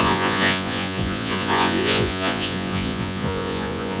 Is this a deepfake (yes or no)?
yes